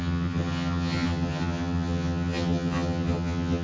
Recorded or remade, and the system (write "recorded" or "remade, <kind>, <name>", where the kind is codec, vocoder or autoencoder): remade, vocoder, HiFi-GAN